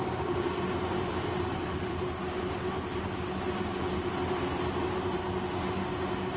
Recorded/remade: recorded